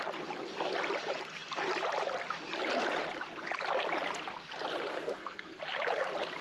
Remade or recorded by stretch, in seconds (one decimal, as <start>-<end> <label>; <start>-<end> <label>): 0.0-4.9 recorded; 4.9-5.6 remade; 5.6-6.4 recorded

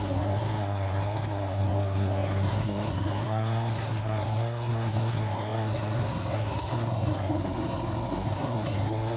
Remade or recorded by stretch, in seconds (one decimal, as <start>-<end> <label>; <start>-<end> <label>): 0.0-9.2 remade

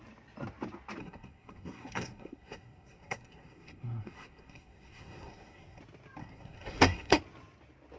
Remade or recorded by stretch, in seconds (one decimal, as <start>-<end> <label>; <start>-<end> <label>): 0.0-1.0 recorded; 1.0-5.8 remade; 5.8-6.2 recorded; 6.2-7.2 remade; 7.2-8.0 recorded

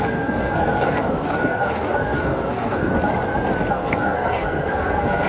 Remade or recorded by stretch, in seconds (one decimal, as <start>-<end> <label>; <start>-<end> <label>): 0.0-2.9 remade; 2.9-3.7 recorded; 3.7-5.3 remade

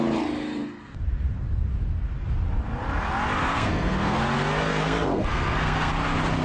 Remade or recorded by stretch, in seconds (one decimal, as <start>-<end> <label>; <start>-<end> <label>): 0.0-3.4 recorded; 3.4-4.2 remade; 4.2-4.7 recorded; 4.7-5.9 remade; 5.9-6.4 recorded